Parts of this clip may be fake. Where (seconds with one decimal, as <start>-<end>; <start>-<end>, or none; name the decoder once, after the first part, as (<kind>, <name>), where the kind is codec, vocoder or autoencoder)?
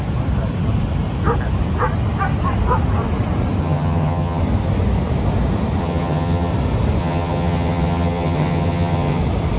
3.6-4.4 (vocoder, HiFi-GAN); 5.8-6.5; 7.0-9.2